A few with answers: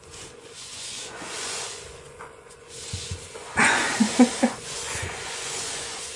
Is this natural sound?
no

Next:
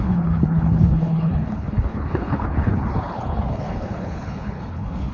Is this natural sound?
no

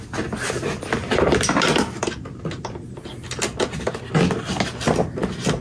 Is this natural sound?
yes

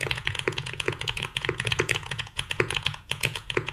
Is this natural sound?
no